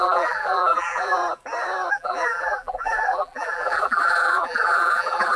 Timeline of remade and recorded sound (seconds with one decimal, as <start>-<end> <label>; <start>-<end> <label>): 0.0-1.2 remade; 1.2-1.9 recorded; 1.9-5.4 remade